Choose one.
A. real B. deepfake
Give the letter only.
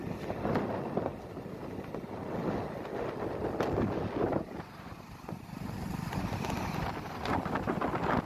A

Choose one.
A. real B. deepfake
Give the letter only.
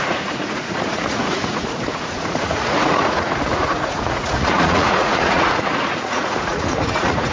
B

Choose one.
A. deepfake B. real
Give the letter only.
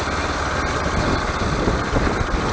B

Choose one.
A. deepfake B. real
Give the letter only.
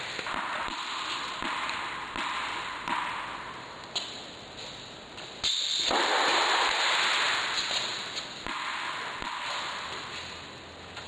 B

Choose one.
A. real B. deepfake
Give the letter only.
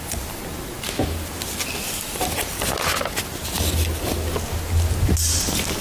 A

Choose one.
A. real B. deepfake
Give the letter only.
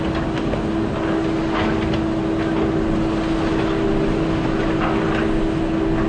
A